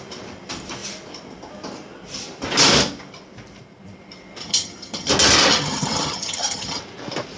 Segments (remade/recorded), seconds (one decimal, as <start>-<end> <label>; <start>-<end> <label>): 0.0-4.4 recorded; 4.4-5.1 remade; 5.1-5.5 recorded; 5.5-6.8 remade; 6.8-7.4 recorded